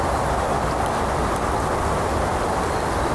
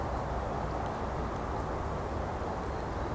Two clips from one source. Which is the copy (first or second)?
first